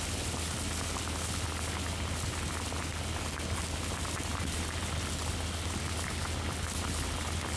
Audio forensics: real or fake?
real